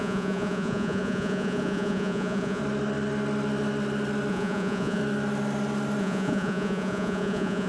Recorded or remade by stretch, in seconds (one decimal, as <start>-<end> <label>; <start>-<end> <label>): 0.0-2.6 remade; 2.6-4.3 recorded; 4.3-5.0 remade; 5.0-6.0 recorded; 6.0-7.7 remade